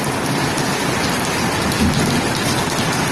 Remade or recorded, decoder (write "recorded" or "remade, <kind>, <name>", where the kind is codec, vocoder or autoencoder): recorded